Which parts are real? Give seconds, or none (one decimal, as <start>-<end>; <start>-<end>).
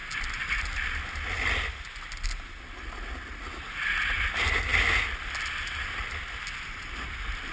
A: 0.0-7.5